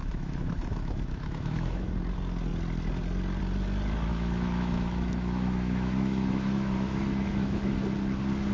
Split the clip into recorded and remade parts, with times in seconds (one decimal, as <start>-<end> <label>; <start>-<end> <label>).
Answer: 0.0-1.9 remade; 1.9-4.1 recorded; 4.1-7.7 remade; 7.7-8.5 recorded